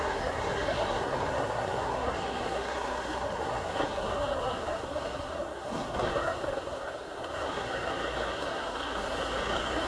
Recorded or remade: remade